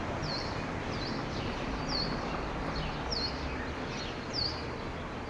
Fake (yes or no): no